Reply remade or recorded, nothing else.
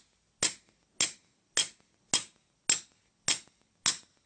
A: recorded